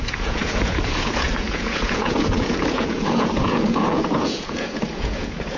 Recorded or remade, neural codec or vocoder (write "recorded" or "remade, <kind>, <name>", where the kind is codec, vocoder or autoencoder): remade, vocoder, Vocos